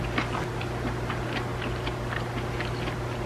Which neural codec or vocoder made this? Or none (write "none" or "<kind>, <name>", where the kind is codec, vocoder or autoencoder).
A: none